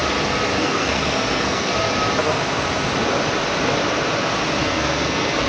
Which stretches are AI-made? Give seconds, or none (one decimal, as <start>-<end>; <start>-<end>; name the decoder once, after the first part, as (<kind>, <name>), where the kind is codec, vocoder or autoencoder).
0.6-1.7 (codec, SNAC); 4.6-5.5